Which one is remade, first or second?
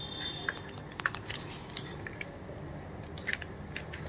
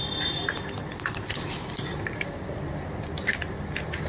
second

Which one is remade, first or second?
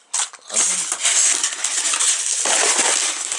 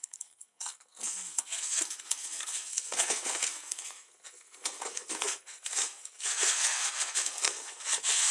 second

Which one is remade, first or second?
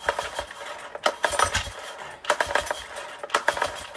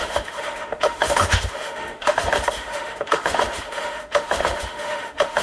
second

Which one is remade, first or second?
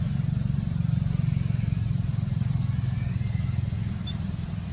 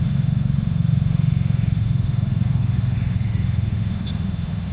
second